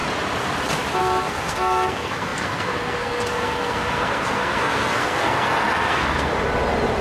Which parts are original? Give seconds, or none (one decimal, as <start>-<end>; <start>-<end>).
0.0-1.0; 6.3-7.0

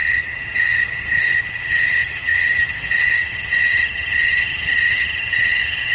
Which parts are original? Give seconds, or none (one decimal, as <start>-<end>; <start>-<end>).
none

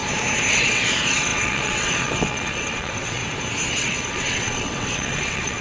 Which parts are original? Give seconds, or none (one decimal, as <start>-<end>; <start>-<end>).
0.0-0.5; 3.2-3.7

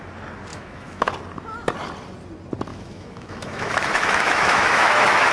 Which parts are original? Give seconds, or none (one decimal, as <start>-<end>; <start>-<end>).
0.0-0.5; 1.1-2.7

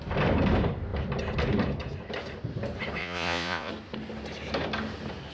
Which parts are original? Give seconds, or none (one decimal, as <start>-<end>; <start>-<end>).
0.0-3.0; 3.7-5.3